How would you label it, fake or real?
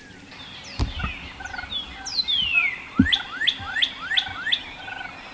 real